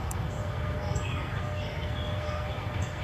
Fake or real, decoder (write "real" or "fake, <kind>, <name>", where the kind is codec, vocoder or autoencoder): fake, codec, SNAC